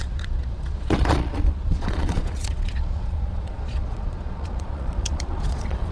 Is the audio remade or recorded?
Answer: remade